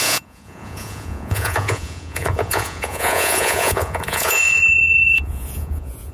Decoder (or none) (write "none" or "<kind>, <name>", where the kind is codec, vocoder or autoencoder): vocoder, Vocos